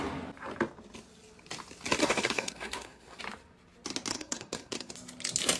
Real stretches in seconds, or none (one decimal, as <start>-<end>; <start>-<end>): 0.0-2.0; 3.2-4.1; 4.9-5.6